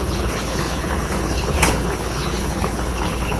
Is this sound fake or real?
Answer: fake